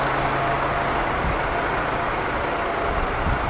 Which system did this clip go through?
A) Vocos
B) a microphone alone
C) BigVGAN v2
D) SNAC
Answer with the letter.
B